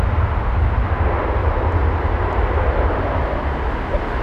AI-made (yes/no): no